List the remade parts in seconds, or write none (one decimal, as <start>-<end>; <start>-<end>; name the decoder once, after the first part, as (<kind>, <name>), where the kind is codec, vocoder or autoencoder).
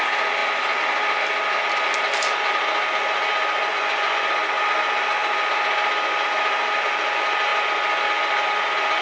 3.7-4.3 (vocoder, Vocos)